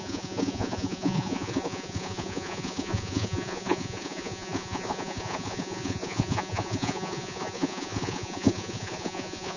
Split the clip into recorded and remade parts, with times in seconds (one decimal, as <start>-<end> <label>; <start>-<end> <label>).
0.0-9.6 remade